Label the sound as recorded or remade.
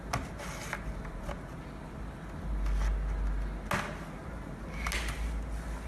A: recorded